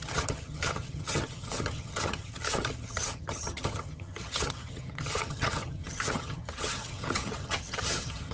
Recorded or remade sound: remade